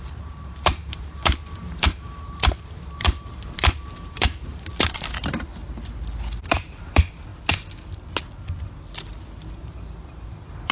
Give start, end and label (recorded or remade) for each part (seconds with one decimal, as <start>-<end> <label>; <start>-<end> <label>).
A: 0.0-5.6 remade; 5.6-6.4 recorded; 6.4-7.3 remade; 7.3-9.6 recorded; 9.6-10.7 remade